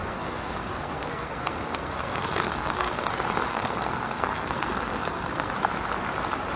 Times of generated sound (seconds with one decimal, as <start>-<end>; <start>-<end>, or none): 0.0-3.1; 3.5-5.5